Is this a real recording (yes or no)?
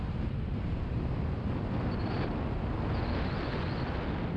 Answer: yes